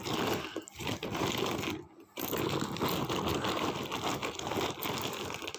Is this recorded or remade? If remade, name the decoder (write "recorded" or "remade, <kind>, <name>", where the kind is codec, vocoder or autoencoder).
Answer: recorded